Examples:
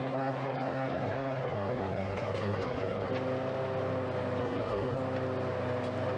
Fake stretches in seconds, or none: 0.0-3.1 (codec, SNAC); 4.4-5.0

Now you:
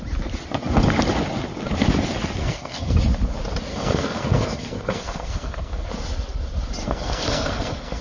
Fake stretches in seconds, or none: 2.4-3.0 (codec, SNAC); 3.7-5.9; 6.8-8.0

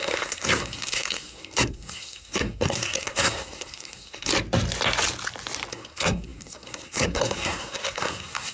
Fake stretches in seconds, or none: 0.0-4.3 (codec, SNAC); 5.7-8.5

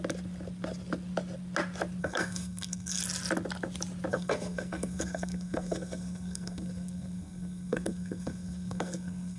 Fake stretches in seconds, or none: 2.0-3.0 (codec, SNAC); 4.1-9.4

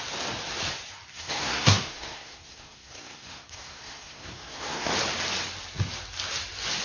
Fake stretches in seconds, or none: 1.1-4.9 (codec, SNAC)

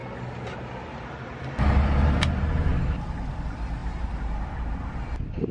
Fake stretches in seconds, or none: none

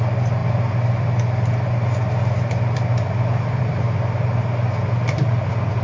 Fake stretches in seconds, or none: none